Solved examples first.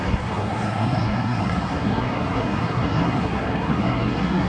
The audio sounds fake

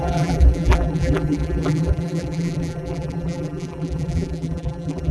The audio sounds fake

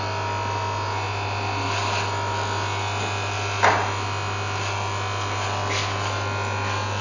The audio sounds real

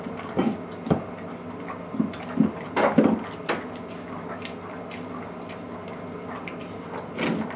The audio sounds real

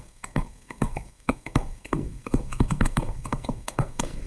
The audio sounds fake